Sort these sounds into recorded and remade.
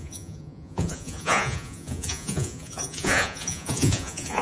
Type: remade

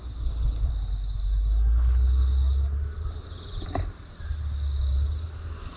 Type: recorded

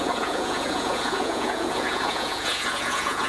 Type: remade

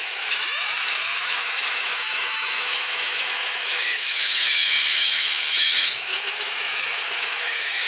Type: remade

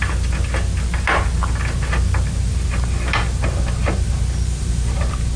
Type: recorded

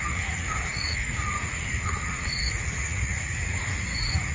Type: remade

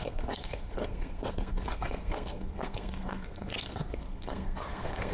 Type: remade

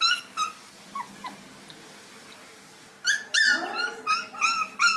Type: recorded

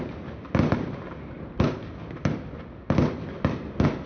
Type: recorded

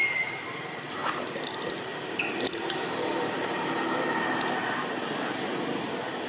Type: recorded